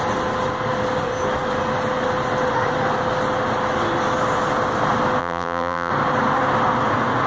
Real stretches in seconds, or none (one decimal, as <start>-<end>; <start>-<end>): 0.0-5.2; 5.9-7.3

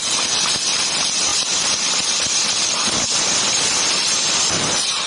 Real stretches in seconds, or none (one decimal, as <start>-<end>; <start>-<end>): 0.0-1.3; 4.4-5.1